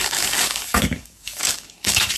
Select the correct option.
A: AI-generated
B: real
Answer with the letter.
A